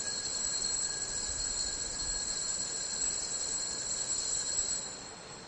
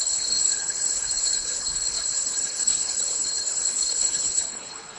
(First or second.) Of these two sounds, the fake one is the second